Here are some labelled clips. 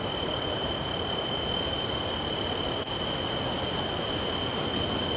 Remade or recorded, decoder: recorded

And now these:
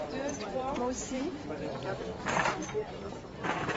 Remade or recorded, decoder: remade, vocoder, BigVGAN v2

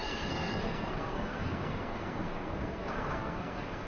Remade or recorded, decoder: remade, codec, SNAC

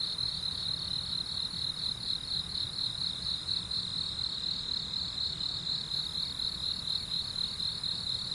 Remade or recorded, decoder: recorded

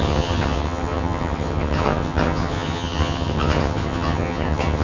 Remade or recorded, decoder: remade, vocoder, HiFi-GAN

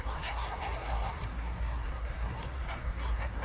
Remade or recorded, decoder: remade, codec, SNAC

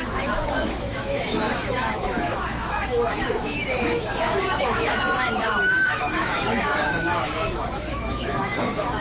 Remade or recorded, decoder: remade, autoencoder, DAC-VAE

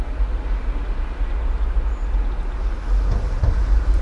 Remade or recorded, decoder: recorded